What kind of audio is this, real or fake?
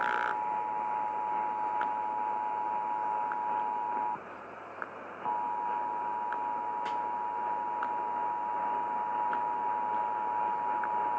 real